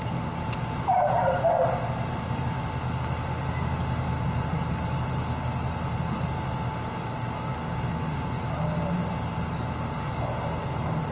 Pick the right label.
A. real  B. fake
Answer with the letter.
A